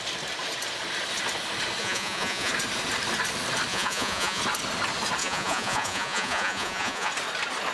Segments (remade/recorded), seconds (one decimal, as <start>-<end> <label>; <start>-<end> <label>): 0.0-1.8 recorded; 1.8-2.5 remade; 2.5-3.7 recorded; 3.7-4.4 remade; 4.4-5.2 recorded; 5.2-7.1 remade; 7.1-7.7 recorded